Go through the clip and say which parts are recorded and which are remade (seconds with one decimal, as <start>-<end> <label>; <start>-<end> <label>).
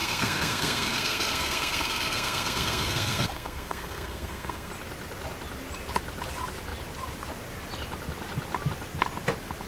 0.0-4.7 remade; 4.7-9.7 recorded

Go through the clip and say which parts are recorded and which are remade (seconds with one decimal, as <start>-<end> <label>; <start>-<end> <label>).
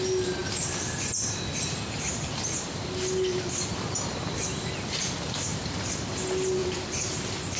0.0-7.6 recorded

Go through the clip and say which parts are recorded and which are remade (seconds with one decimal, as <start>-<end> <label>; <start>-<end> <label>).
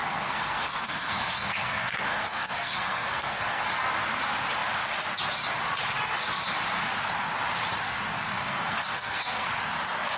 0.0-3.6 remade; 3.6-8.4 recorded; 8.4-9.5 remade; 9.5-10.2 recorded